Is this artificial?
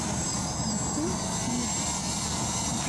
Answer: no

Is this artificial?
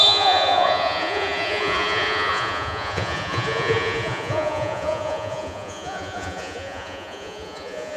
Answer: yes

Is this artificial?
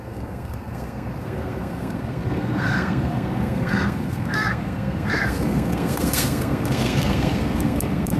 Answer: yes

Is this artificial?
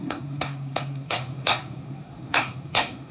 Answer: yes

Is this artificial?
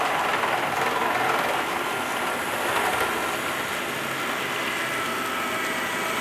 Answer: no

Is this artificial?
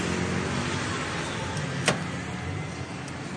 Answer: no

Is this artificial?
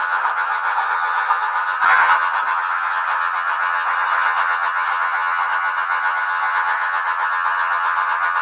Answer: yes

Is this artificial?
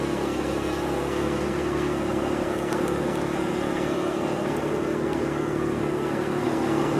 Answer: yes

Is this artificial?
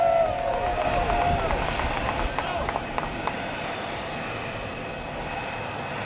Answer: no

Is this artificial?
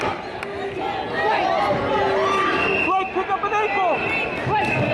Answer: no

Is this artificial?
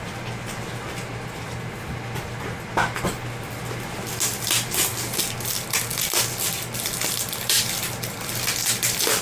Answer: no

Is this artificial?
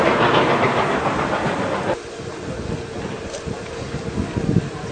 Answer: no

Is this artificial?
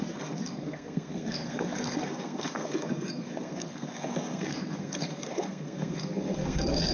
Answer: yes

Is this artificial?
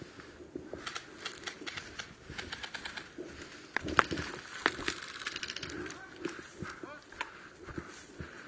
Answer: no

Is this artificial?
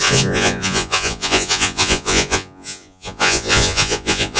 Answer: yes